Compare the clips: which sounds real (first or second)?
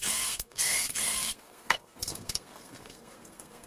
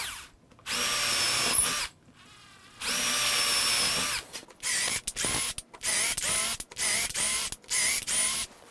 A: second